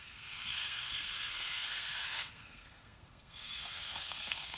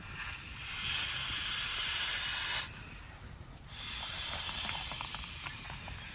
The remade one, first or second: first